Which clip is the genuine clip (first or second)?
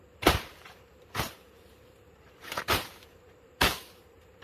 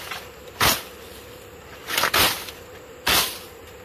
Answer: second